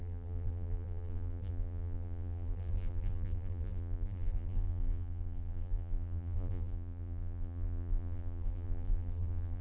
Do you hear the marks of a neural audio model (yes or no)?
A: yes